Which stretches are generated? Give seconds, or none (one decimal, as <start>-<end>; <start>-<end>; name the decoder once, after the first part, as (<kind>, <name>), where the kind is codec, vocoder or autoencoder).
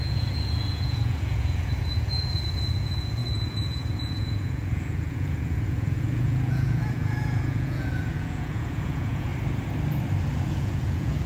0.0-9.3 (vocoder, Vocos); 10.4-11.3